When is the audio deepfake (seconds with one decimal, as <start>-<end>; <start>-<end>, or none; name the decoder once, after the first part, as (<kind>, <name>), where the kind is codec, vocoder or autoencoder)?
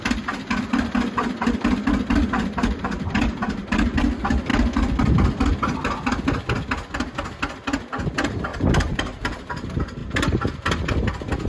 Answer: 8.5-9.5 (vocoder, BigVGAN v2)